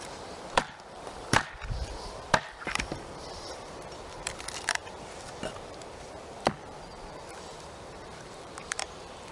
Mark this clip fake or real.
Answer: fake